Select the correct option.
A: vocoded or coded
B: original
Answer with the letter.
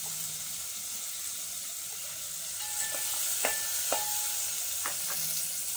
B